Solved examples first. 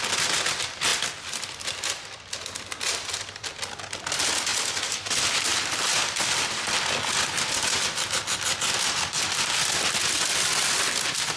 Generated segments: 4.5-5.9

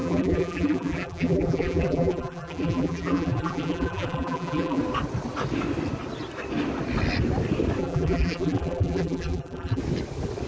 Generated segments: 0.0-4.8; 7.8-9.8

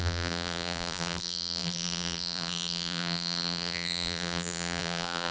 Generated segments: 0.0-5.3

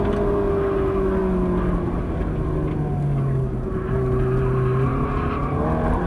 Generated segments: none

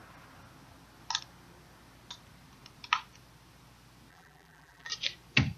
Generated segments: 4.1-4.9

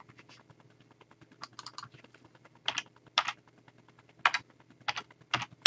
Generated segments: none

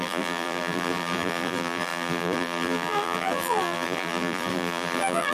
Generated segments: 0.0-5.3